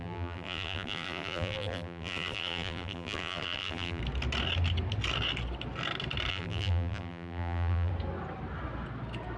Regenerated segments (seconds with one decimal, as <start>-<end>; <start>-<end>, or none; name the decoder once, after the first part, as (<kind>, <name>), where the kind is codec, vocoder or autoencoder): 0.0-4.0 (vocoder, BigVGAN v2); 6.3-7.9